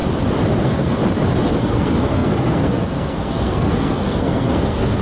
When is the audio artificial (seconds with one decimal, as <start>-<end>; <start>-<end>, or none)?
0.6-1.0; 1.6-5.0